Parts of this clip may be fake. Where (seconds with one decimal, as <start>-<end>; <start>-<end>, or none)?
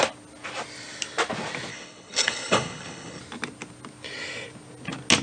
1.7-3.2